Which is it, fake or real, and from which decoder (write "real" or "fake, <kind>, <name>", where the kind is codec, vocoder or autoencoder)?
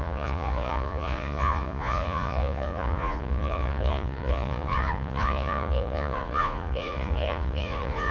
fake, vocoder, Vocos